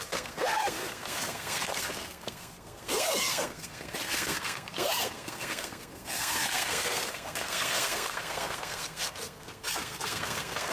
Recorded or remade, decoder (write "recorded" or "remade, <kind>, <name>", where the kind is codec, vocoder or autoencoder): remade, codec, SNAC